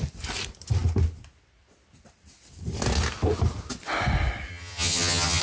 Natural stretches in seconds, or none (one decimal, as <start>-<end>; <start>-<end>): 0.0-4.5

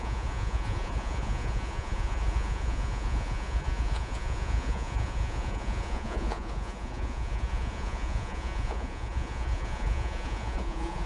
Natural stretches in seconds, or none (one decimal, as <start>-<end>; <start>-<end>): none